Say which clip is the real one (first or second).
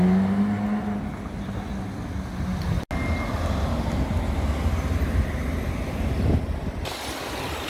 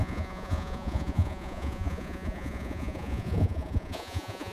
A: first